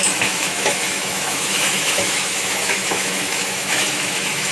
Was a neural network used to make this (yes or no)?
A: yes